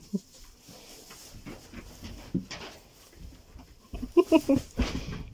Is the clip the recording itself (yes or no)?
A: yes